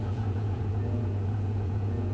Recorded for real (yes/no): no